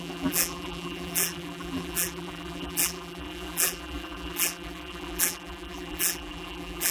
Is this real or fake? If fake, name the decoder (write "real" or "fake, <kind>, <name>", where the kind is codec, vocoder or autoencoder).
fake, vocoder, BigVGAN v2